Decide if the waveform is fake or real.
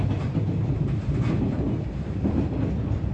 fake